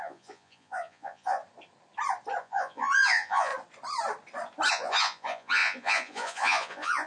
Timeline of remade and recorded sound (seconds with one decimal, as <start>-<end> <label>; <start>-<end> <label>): 0.0-1.4 remade; 1.4-2.4 recorded; 2.4-3.5 remade; 3.5-4.7 recorded; 4.7-7.1 remade